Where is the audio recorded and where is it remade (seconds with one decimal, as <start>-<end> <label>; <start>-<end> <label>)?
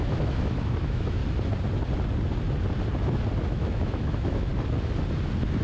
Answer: 0.0-1.2 remade; 1.2-3.4 recorded; 3.4-4.5 remade; 4.5-5.6 recorded